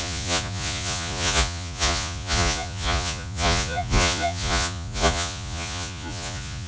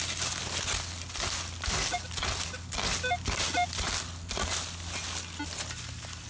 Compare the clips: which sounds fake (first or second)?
first